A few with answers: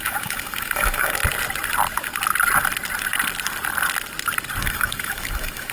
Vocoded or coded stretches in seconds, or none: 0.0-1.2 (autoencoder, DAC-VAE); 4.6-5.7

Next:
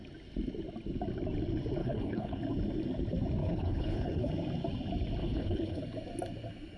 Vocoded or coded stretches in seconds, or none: 1.8-2.4 (codec, HILCodec); 3.4-4.3; 5.2-5.8

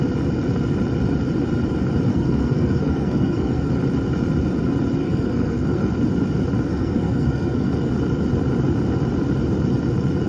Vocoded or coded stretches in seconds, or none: 2.1-3.7 (codec, SNAC); 5.0-5.9; 6.7-7.9